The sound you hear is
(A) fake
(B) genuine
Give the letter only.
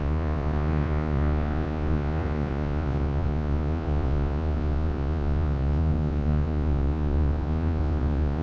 A